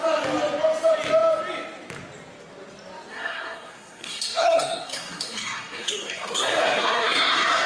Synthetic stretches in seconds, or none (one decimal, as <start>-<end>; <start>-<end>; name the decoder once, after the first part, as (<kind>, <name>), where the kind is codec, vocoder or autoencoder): 3.1-7.7 (codec, SNAC)